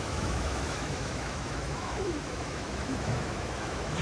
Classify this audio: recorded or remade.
remade